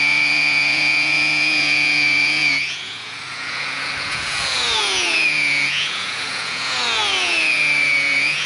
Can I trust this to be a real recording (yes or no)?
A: no